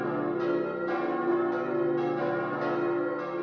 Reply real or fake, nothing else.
real